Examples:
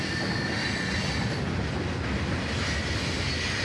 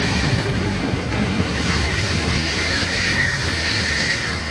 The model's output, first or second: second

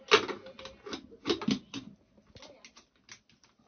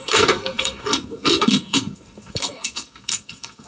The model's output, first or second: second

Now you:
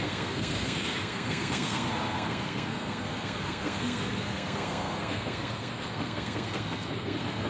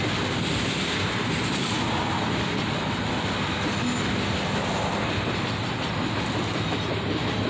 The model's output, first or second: first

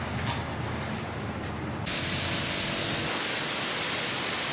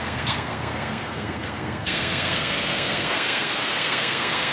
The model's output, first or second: second